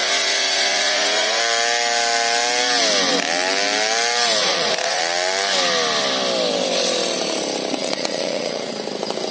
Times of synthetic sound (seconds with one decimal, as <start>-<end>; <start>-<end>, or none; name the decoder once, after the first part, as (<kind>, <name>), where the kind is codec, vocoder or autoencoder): 0.0-1.4 (vocoder, Vocos); 4.4-5.0; 7.8-8.7

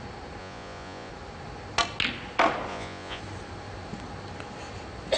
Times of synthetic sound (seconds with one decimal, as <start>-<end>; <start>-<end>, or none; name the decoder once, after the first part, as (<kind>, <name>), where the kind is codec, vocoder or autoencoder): 0.4-1.1 (vocoder, Vocos); 2.7-3.2

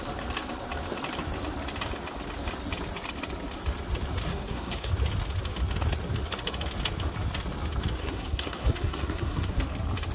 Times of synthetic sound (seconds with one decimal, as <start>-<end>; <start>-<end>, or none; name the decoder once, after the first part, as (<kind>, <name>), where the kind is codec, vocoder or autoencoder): 4.3-4.9 (codec, SNAC); 8.0-9.6

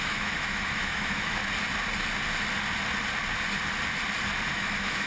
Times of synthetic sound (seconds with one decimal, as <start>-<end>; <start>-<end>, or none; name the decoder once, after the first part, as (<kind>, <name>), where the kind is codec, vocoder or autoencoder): 0.0-1.4 (autoencoder, DAC-VAE); 4.5-5.1

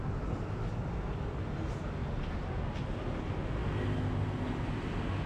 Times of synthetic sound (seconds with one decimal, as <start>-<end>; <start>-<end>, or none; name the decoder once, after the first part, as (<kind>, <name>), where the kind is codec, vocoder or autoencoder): none